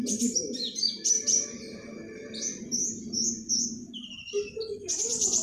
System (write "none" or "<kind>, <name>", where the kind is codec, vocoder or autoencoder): none